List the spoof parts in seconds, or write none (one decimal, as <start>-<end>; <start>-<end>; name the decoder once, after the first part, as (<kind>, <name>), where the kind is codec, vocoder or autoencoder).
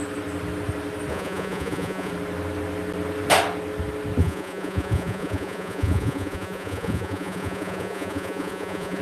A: 1.1-2.1 (vocoder, Vocos); 4.2-9.0